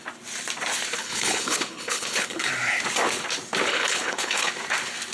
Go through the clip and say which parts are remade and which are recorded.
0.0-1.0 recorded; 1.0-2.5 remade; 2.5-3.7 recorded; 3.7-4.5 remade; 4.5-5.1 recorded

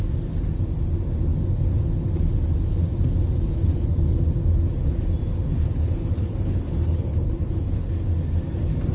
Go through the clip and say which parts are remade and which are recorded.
0.0-5.6 recorded; 5.6-7.9 remade; 7.9-8.9 recorded

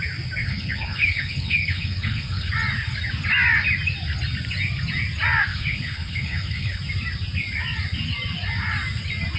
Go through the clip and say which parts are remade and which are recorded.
0.0-0.4 recorded; 0.4-2.5 remade; 2.5-5.5 recorded; 5.5-6.8 remade; 6.8-9.4 recorded

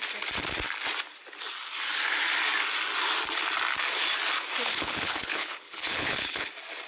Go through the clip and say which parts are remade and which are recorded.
0.0-4.7 recorded; 4.7-6.5 remade; 6.5-6.9 recorded

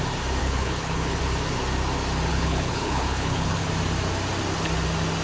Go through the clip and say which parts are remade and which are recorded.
0.0-0.4 recorded; 0.4-1.2 remade; 1.2-2.3 recorded; 2.3-3.7 remade; 3.7-5.2 recorded

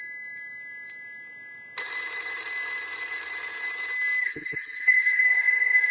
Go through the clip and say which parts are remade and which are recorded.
0.0-4.2 recorded; 4.2-5.9 remade

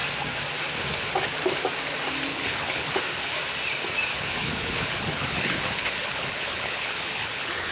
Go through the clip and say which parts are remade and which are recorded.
0.0-2.3 recorded; 2.3-3.0 remade; 3.0-4.1 recorded; 4.1-7.7 remade

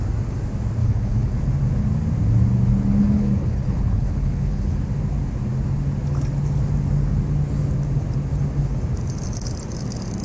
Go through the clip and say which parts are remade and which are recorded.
0.0-0.8 recorded; 0.8-1.4 remade; 1.4-3.0 recorded; 3.0-4.8 remade; 4.8-10.2 recorded